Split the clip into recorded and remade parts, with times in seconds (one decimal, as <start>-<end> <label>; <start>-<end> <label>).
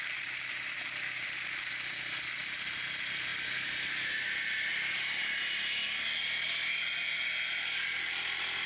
0.0-7.5 recorded; 7.5-8.7 remade